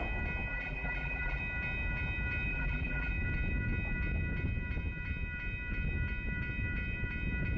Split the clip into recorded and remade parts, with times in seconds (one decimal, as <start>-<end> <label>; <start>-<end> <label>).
0.0-0.5 recorded; 0.5-1.4 remade; 1.4-2.5 recorded; 2.5-3.1 remade; 3.1-7.6 recorded